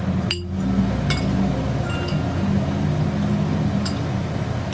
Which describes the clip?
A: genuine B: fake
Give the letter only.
A